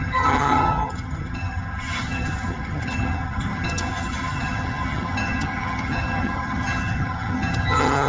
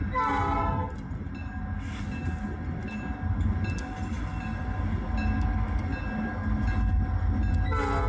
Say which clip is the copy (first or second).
first